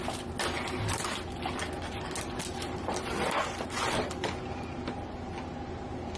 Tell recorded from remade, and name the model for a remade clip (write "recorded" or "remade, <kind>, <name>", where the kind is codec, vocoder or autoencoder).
recorded